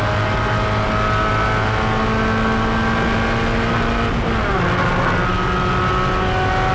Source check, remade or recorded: recorded